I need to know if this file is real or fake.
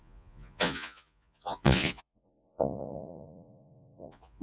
fake